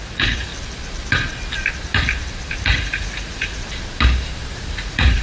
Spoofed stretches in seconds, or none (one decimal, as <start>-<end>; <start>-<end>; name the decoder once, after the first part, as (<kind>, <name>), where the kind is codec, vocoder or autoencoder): 0.0-0.5 (vocoder, Vocos); 2.6-3.6; 4.7-5.2